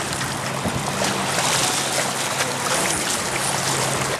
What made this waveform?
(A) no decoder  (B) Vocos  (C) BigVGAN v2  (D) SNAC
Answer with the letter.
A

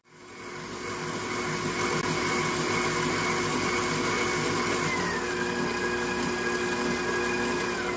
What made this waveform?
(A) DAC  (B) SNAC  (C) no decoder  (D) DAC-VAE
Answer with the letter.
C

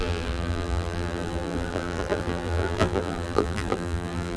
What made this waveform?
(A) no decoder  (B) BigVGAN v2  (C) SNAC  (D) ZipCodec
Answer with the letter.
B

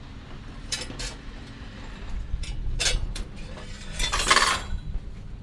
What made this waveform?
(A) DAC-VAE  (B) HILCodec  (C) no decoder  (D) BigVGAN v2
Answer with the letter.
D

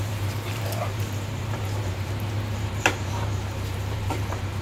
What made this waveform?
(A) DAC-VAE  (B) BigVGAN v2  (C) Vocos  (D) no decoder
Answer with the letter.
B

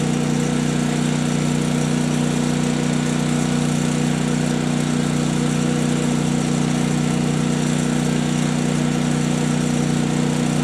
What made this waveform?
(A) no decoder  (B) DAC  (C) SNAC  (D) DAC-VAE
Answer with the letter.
A